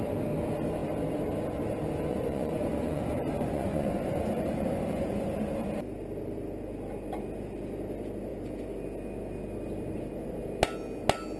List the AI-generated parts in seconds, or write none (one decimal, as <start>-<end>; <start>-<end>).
2.1-5.2

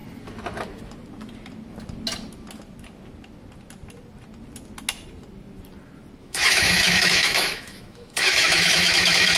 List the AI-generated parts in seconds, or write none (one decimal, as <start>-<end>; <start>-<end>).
6.2-9.4

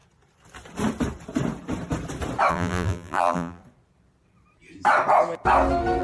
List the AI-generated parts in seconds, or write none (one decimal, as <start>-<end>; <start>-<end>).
2.5-3.6